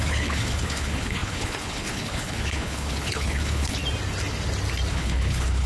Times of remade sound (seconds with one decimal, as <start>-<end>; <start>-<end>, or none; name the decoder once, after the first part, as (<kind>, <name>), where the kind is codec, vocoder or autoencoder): 0.0-3.8 (codec, HILCodec); 4.9-5.7